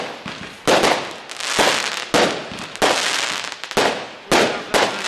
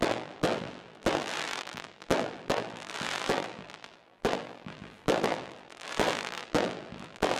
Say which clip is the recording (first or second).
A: first